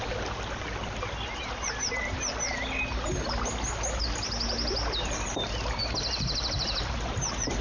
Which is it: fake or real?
real